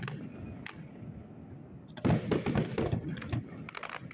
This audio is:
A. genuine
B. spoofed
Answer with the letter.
A